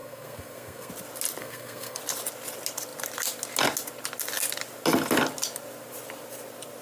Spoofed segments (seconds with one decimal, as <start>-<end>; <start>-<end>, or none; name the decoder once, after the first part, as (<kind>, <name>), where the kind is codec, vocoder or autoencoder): 0.0-0.9 (codec, SNAC); 1.4-2.0